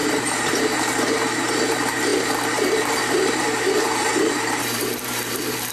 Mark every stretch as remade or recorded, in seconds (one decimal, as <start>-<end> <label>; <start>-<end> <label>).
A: 0.0-5.7 remade